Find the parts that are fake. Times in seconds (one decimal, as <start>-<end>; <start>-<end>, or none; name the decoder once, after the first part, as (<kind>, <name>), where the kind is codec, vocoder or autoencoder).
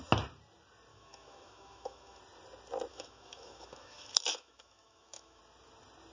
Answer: 0.9-2.2 (autoencoder, DAC-VAE); 2.9-5.4